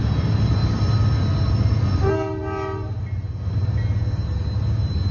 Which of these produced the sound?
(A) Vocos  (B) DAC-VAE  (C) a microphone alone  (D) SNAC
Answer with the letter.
C